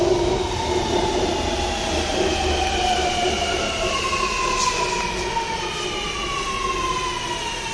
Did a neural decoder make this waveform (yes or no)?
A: no